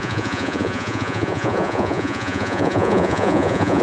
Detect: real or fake fake